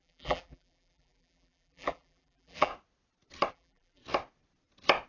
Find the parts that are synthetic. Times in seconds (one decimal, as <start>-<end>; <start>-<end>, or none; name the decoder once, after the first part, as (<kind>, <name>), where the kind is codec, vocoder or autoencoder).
0.0-2.7 (vocoder, BigVGAN v2); 3.5-4.0